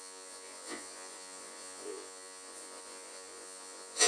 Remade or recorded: remade